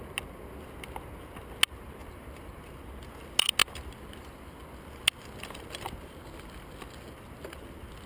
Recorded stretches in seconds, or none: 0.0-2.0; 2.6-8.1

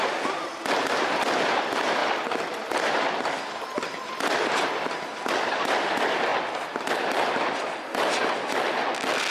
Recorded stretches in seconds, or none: 0.0-9.3